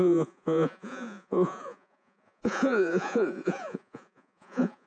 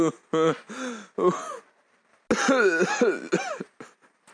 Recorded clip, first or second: second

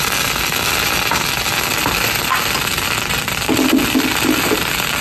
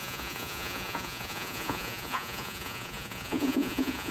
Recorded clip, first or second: first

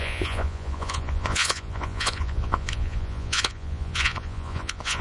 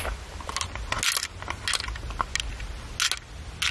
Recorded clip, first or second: second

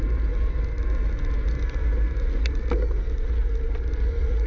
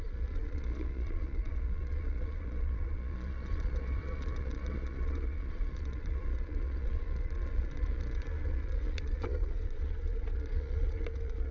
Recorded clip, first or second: first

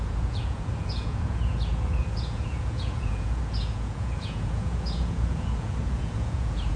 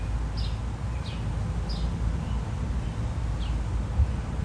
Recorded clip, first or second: second